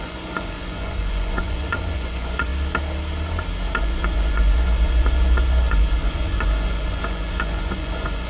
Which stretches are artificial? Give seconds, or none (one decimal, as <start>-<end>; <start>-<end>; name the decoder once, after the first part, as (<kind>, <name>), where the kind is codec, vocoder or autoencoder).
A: 0.0-2.5 (vocoder, Vocos); 3.8-8.3

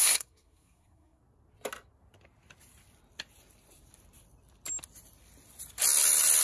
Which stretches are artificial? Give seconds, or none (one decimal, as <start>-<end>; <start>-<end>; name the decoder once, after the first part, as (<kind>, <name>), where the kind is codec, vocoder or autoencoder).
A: 0.0-1.2 (codec, SNAC)

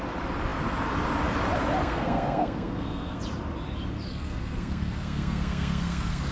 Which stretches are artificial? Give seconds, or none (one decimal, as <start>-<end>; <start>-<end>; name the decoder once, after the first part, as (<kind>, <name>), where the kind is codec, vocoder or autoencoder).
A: 1.8-3.2 (codec, SNAC); 4.1-6.3

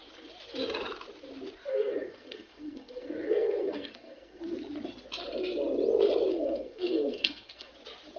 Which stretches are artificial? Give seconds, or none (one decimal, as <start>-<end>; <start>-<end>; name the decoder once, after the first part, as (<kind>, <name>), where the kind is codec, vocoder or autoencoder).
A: 1.7-4.4 (codec, SNAC); 6.3-7.7

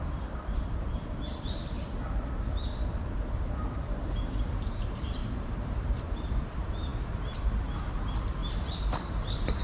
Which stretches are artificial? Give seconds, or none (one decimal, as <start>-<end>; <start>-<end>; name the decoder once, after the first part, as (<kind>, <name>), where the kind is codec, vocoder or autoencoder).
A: 0.0-1.6 (vocoder, BigVGAN v2); 3.3-6.9; 7.9-9.6

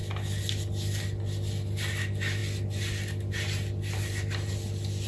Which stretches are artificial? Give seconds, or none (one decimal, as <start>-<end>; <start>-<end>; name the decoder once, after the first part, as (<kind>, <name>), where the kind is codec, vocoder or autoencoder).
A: none

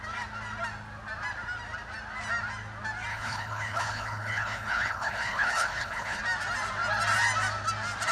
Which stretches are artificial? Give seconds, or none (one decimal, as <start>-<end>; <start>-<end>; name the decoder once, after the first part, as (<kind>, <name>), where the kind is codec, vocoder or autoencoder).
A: 3.1-6.2 (codec, HILCodec)